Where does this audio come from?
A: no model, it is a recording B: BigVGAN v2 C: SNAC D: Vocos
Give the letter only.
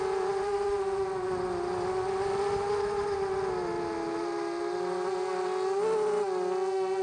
A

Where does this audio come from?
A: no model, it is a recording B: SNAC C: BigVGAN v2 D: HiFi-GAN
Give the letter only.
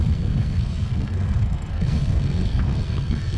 B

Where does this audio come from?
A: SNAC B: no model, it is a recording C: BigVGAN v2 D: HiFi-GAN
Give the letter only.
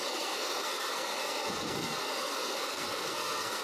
A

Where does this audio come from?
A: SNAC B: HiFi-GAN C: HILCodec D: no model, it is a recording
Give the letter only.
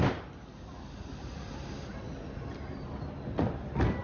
D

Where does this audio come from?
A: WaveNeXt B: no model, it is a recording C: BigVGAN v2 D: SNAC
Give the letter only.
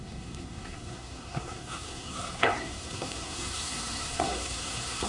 D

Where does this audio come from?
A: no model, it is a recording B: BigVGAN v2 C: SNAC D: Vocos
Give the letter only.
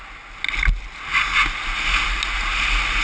A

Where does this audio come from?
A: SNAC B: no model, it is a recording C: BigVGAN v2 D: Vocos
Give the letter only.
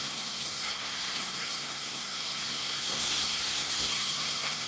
A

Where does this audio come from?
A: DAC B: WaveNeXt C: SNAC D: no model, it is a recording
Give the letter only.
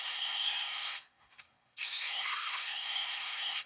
C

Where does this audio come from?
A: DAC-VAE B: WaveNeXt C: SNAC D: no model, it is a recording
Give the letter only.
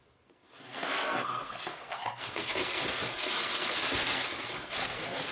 C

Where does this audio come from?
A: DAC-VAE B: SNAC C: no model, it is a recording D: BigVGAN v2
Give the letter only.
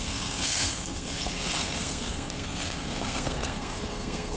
B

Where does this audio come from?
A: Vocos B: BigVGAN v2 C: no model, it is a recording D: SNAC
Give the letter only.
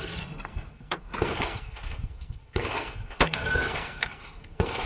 D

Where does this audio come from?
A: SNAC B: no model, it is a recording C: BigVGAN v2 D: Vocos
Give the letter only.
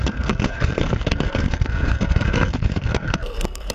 A